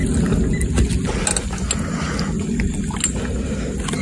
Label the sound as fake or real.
real